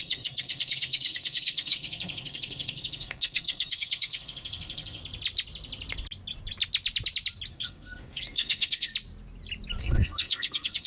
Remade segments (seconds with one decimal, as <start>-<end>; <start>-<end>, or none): 0.0-5.0; 7.5-8.9; 9.8-10.9